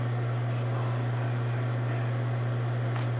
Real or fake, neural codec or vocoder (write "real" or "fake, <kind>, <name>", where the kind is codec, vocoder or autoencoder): real